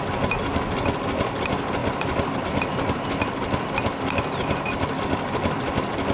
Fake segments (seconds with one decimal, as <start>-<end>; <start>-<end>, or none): none